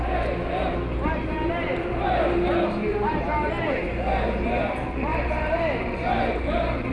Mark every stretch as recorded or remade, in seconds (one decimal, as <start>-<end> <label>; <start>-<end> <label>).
0.0-2.9 recorded; 2.9-3.7 remade; 3.7-5.1 recorded; 5.1-6.2 remade; 6.2-6.9 recorded